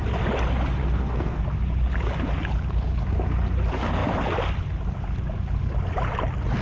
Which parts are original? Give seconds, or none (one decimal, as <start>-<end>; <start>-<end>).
0.0-0.8; 1.4-6.6